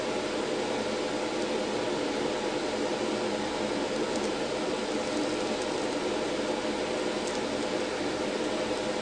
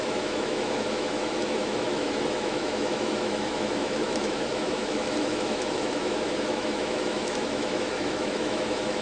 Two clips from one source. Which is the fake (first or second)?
second